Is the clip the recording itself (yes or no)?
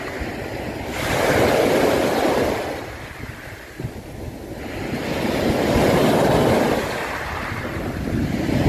yes